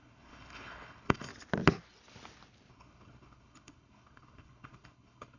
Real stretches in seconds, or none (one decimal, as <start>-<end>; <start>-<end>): 1.3-2.7